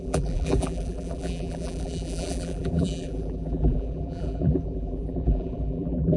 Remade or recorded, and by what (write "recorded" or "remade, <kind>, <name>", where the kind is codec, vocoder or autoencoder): remade, vocoder, BigVGAN v2